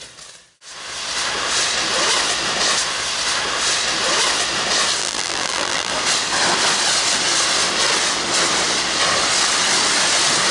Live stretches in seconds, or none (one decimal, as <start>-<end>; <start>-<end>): 0.0-5.0; 5.9-10.5